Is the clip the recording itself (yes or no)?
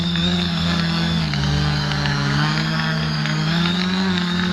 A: no